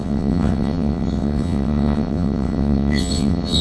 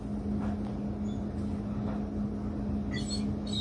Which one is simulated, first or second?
first